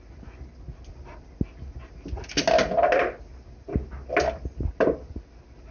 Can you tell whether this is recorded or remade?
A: recorded